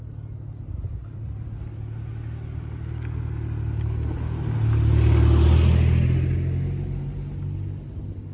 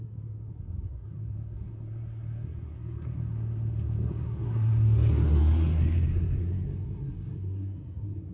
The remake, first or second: second